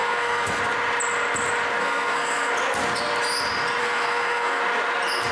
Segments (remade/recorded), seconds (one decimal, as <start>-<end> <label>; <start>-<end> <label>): 0.0-0.6 remade; 0.6-1.8 recorded; 1.8-2.5 remade; 2.5-3.8 recorded; 3.8-4.6 remade; 4.6-5.3 recorded